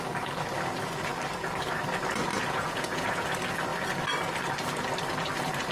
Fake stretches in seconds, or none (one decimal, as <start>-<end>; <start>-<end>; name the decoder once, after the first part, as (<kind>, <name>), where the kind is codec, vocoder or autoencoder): 2.3-3.3 (vocoder, Vocos)